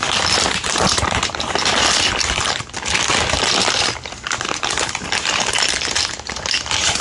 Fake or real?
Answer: real